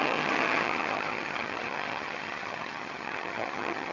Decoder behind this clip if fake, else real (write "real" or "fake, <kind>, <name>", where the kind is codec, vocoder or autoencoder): fake, vocoder, HiFi-GAN